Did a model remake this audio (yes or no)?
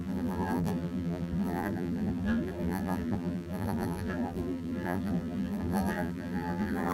yes